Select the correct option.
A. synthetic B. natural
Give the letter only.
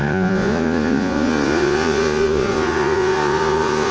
A